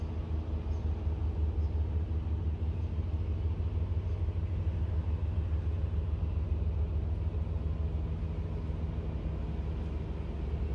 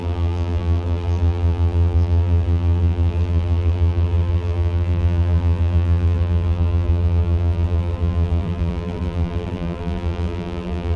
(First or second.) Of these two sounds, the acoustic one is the first